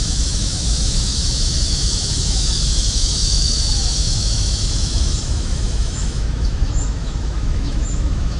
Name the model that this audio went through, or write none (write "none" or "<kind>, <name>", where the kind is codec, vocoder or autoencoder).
autoencoder, DAC-VAE